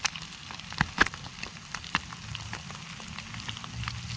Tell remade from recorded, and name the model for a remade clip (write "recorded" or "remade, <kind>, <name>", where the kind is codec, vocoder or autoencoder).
recorded